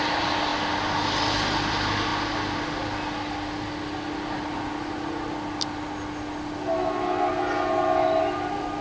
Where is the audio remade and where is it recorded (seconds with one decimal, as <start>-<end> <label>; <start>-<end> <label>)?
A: 0.0-8.8 recorded